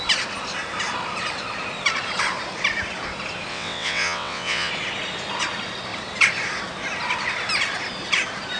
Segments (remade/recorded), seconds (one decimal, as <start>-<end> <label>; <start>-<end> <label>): 0.0-3.5 recorded; 3.5-4.7 remade; 4.7-8.6 recorded